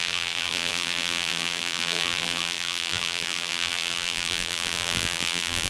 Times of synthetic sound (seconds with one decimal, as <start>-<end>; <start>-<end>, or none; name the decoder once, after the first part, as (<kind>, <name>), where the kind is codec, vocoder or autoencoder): 0.0-5.7 (vocoder, BigVGAN v2)